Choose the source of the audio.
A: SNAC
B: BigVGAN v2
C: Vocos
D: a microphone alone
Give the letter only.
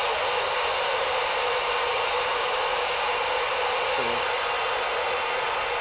D